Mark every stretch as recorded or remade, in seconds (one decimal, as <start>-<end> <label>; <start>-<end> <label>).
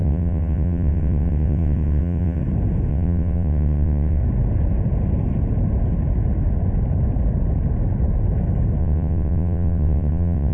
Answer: 0.0-2.4 remade; 2.4-2.9 recorded; 2.9-4.2 remade; 4.2-8.8 recorded; 8.8-10.5 remade